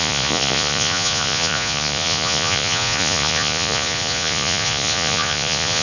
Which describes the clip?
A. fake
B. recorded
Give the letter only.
A